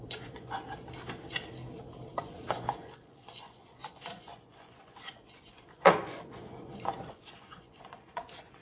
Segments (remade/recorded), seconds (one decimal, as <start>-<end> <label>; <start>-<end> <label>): 0.0-0.6 remade; 0.6-2.1 recorded; 2.1-8.6 remade